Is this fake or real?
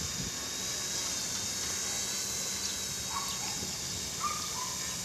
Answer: real